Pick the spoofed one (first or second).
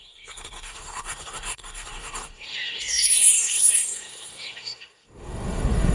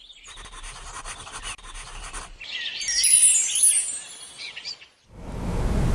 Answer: first